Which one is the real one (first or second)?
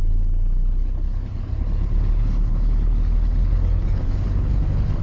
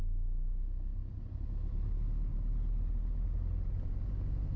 second